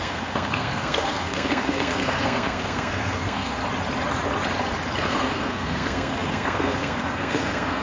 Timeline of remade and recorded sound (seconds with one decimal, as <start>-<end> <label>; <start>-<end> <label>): 0.0-3.6 remade; 3.6-5.0 recorded; 5.0-7.8 remade